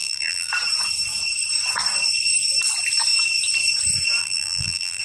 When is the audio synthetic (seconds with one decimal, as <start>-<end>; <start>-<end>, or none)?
0.0-0.5; 4.2-5.0